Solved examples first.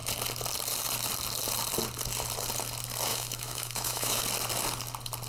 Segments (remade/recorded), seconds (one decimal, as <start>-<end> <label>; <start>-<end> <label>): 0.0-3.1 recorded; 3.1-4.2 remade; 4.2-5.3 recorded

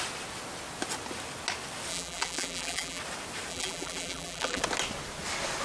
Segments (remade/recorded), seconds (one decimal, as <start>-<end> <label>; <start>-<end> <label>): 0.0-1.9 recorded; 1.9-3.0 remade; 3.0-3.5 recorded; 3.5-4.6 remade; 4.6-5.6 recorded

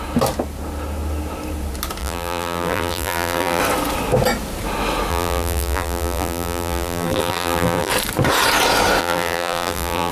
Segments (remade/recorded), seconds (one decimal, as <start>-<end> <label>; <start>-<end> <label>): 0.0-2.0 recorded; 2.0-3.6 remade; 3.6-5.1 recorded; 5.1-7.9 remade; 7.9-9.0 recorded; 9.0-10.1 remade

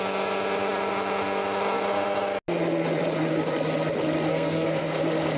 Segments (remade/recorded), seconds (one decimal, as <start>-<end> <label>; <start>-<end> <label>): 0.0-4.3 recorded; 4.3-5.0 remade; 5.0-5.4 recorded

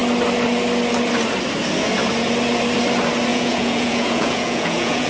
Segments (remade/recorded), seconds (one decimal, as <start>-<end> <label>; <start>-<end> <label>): 0.0-3.3 recorded; 3.3-5.1 remade

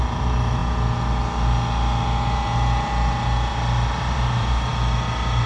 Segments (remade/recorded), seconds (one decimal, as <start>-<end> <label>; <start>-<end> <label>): 0.0-0.6 remade; 0.6-3.9 recorded; 3.9-4.7 remade; 4.7-5.5 recorded

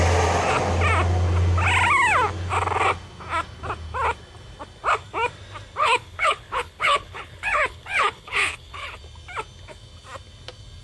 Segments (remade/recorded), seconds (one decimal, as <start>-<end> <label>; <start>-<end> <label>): 0.0-5.8 recorded; 5.8-9.0 remade; 9.0-10.8 recorded

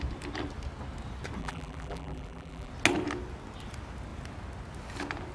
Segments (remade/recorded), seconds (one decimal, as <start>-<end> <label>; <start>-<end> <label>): 0.0-1.4 recorded; 1.4-2.7 remade; 2.7-5.3 recorded